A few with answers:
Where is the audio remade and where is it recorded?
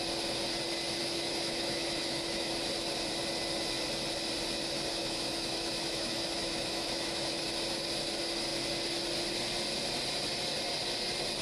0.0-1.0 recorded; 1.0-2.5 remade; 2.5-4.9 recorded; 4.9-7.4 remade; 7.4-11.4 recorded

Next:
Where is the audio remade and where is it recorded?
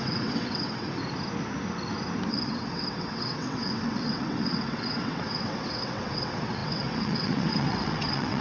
0.0-1.0 remade; 1.0-2.3 recorded; 2.3-8.4 remade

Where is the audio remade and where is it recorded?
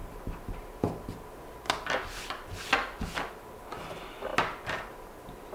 0.0-5.5 recorded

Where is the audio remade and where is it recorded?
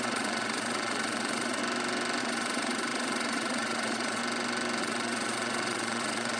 0.0-1.6 remade; 1.6-2.2 recorded; 2.2-4.2 remade; 4.2-4.8 recorded; 4.8-6.4 remade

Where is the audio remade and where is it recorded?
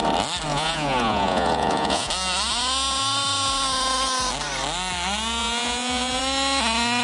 0.0-0.5 recorded; 0.5-2.1 remade; 2.1-5.4 recorded; 5.4-6.2 remade; 6.2-7.0 recorded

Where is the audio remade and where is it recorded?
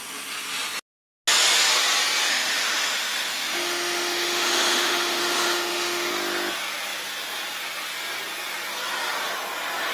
0.0-2.3 recorded; 2.3-6.1 remade; 6.1-9.9 recorded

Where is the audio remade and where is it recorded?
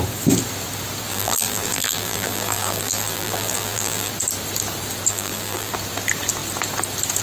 0.0-1.1 recorded; 1.1-4.1 remade; 4.1-5.1 recorded; 5.1-5.7 remade; 5.7-7.2 recorded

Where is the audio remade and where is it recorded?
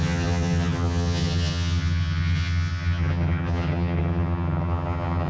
0.0-5.3 remade